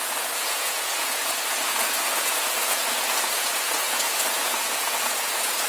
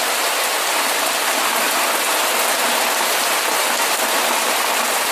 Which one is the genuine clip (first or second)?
second